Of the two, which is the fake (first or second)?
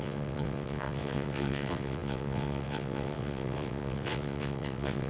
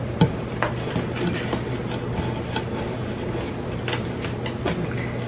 first